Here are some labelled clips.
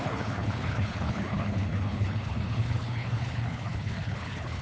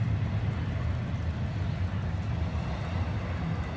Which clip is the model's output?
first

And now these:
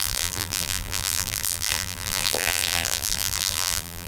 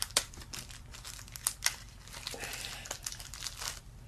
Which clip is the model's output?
first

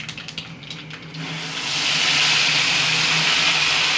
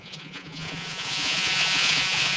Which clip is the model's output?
second